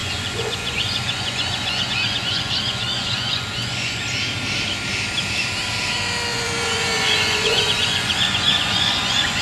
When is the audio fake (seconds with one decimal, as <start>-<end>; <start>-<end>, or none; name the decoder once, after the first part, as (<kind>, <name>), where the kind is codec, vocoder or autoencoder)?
0.0-4.0 (vocoder, Vocos); 6.3-9.4